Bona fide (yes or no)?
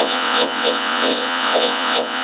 no